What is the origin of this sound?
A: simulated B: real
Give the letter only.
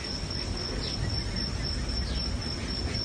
B